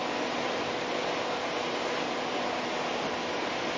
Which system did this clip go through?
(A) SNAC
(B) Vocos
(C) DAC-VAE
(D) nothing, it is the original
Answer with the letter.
D